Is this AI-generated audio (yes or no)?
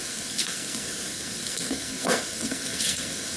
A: yes